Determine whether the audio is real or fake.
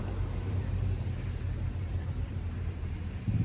fake